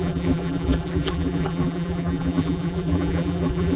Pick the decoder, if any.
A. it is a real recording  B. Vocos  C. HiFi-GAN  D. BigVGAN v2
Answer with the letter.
D